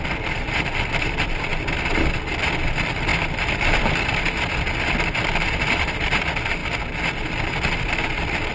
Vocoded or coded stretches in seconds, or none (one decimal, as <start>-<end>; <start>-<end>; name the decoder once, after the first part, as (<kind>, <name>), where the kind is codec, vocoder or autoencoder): 0.0-1.5 (vocoder, BigVGAN v2); 2.1-6.6; 7.3-8.5